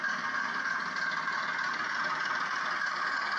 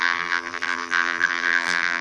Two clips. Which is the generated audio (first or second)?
second